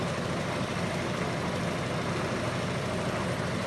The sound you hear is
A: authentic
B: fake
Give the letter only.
A